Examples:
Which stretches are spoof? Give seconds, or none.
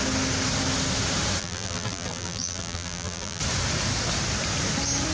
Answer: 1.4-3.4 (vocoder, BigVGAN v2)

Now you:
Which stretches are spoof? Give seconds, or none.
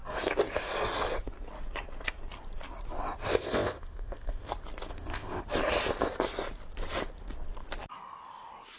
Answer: 3.3-4.5 (codec, ZipCodec); 4.9-5.4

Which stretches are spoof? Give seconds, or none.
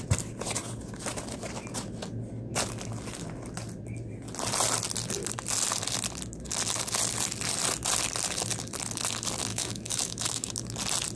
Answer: 9.5-10.5 (autoencoder, DAC-VAE)